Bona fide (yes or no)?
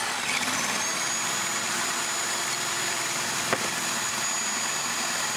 yes